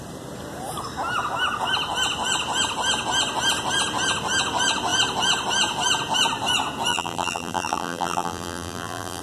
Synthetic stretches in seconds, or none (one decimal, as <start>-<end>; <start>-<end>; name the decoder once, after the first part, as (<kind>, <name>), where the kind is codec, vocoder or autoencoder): 6.9-9.2 (vocoder, BigVGAN v2)

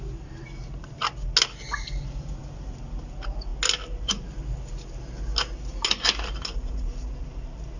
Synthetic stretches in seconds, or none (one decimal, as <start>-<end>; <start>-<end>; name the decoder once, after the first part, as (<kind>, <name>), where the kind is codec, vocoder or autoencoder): none

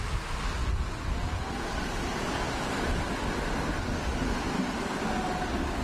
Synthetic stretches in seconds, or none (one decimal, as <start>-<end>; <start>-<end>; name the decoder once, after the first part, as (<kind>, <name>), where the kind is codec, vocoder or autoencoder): none

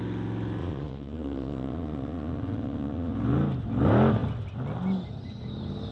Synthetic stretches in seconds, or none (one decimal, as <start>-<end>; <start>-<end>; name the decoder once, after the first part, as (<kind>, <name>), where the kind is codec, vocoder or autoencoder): 0.6-3.1 (vocoder, Vocos)

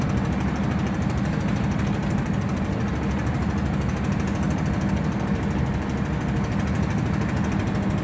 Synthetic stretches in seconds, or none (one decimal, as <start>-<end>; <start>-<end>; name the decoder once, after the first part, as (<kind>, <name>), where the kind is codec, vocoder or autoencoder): 2.0-2.9 (vocoder, BigVGAN v2)

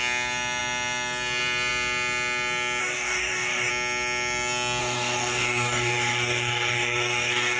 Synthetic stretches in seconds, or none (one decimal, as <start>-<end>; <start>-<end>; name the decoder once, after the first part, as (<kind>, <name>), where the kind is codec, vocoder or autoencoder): 2.8-3.7 (codec, DAC); 4.8-7.6

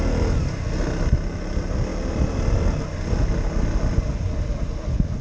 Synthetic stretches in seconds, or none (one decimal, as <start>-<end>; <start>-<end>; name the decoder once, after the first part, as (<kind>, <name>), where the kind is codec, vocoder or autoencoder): none

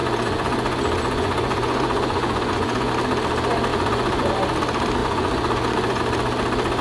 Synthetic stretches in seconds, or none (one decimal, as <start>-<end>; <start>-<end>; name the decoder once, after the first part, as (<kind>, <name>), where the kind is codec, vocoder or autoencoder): 0.0-2.9 (vocoder, Vocos); 3.7-4.3; 5.0-6.0